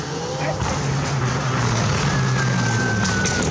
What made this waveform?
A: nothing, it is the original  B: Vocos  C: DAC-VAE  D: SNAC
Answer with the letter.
A